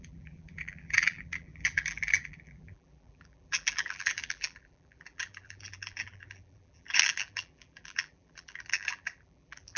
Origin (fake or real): fake